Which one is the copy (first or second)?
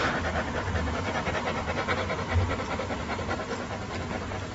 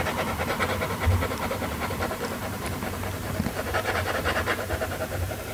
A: second